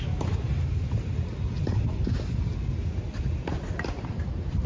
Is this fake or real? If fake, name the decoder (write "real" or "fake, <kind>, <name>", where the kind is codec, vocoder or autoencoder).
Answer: real